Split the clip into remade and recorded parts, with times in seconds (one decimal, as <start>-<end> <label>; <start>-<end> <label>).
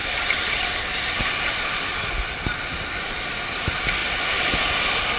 0.0-5.2 recorded